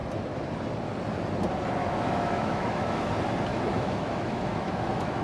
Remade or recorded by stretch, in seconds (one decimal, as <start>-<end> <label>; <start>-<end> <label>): 0.0-1.8 recorded; 1.8-3.1 remade; 3.1-3.5 recorded; 3.5-5.2 remade